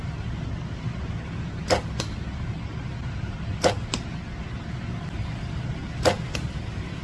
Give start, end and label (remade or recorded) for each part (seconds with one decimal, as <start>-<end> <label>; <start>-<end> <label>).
0.0-7.0 recorded